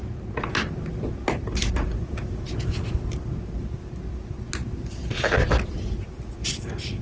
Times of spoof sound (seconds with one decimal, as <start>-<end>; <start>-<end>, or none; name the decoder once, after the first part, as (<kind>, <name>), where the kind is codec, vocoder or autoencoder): none